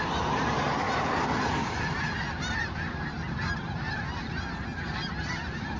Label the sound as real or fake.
real